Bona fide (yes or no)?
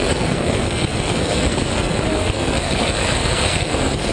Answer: no